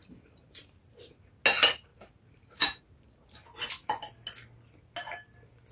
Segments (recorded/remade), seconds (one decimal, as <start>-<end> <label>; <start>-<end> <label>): 0.0-0.8 remade; 0.8-1.9 recorded; 1.9-2.8 remade; 2.8-5.7 recorded